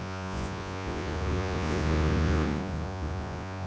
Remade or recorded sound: remade